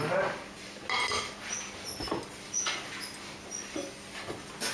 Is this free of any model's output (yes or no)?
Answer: yes